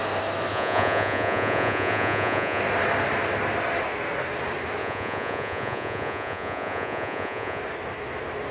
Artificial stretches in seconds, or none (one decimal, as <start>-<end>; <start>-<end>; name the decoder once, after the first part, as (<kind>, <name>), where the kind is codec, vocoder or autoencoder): 0.5-2.6 (vocoder, Vocos); 4.8-7.6